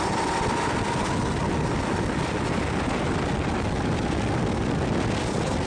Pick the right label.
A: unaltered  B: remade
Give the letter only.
A